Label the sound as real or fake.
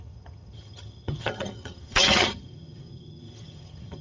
fake